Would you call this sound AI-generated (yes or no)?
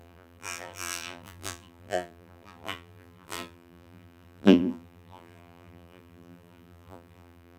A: yes